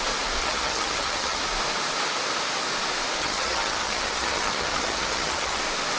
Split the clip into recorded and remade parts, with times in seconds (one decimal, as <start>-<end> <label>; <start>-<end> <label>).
0.0-0.4 recorded; 0.4-1.4 remade; 1.4-3.2 recorded; 3.2-5.6 remade; 5.6-6.0 recorded

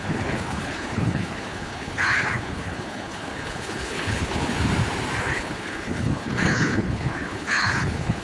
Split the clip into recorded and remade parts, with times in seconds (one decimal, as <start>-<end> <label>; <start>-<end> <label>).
0.0-4.5 remade; 4.5-5.2 recorded; 5.2-8.2 remade

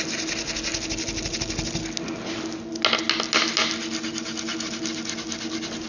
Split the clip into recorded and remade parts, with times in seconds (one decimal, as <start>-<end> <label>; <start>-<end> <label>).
0.0-5.9 recorded

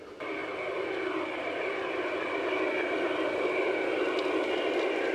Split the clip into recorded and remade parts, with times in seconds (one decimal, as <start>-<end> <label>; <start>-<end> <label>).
0.0-5.1 recorded

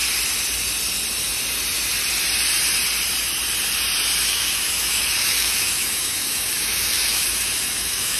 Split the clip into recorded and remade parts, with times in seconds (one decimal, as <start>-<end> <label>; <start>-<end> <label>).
0.0-4.3 recorded; 4.3-8.2 remade

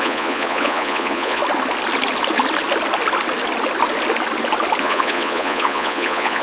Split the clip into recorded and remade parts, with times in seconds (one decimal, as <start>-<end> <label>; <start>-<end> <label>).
0.0-1.4 remade; 1.4-4.8 recorded; 4.8-6.4 remade